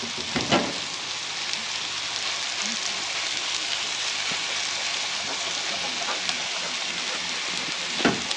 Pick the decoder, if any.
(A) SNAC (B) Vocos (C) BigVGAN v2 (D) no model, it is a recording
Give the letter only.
D